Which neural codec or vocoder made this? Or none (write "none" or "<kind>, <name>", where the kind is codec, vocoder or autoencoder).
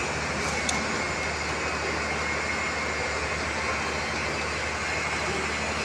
none